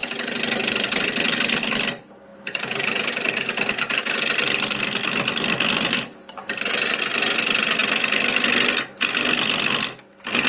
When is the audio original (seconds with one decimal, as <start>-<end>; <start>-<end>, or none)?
1.6-2.3; 3.1-10.5